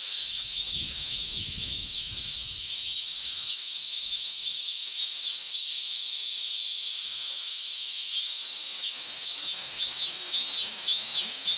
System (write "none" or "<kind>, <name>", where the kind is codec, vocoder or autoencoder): autoencoder, DAC-VAE